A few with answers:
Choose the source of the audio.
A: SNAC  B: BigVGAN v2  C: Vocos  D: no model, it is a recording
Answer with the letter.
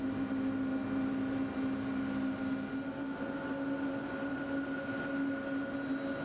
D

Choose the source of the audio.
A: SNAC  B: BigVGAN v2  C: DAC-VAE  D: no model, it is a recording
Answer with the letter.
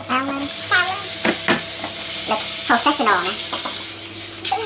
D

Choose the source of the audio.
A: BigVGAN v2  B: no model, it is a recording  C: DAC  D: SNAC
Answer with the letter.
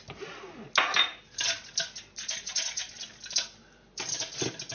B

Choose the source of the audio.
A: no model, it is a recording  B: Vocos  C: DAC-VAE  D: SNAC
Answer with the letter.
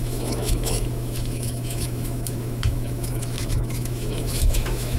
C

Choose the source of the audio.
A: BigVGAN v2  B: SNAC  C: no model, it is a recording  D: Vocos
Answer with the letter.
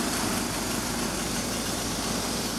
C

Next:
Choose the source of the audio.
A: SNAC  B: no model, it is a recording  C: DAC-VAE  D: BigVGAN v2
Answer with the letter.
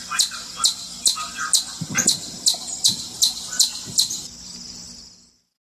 B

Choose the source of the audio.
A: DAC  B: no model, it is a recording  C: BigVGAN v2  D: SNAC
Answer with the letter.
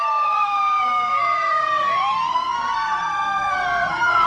D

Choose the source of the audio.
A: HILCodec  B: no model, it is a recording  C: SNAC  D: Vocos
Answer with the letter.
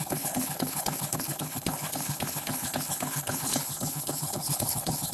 A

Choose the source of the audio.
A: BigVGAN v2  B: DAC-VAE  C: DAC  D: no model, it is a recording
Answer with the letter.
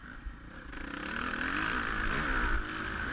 D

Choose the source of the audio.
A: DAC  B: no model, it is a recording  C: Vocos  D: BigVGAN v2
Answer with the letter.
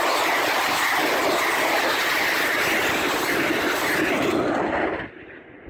B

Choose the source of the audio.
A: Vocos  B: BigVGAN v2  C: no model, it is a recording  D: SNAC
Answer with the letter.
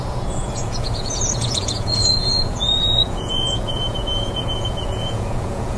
A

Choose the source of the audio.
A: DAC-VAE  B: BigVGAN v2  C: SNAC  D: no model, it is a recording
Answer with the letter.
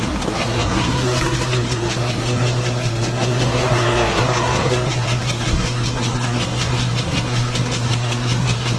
C